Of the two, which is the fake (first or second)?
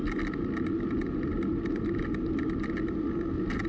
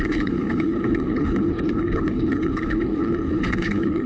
second